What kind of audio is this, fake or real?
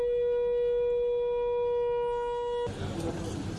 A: real